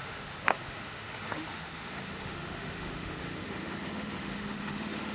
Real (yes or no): no